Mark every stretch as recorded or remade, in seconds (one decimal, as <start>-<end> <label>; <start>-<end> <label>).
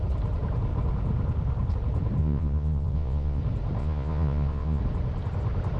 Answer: 0.0-2.2 recorded; 2.2-3.4 remade; 3.4-3.8 recorded; 3.8-4.8 remade; 4.8-5.8 recorded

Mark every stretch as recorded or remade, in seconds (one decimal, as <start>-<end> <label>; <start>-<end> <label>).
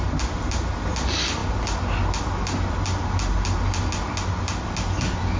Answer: 0.0-5.4 recorded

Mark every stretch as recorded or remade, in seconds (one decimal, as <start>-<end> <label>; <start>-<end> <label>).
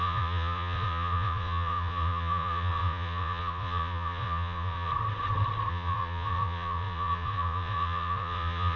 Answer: 0.0-4.9 remade; 4.9-5.7 recorded; 5.7-8.8 remade